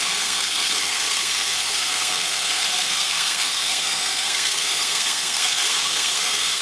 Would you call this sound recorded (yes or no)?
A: no